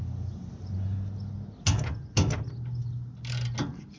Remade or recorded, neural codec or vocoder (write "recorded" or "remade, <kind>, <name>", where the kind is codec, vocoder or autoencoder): recorded